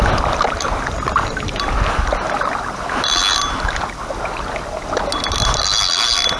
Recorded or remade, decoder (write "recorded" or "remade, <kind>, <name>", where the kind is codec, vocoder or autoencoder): recorded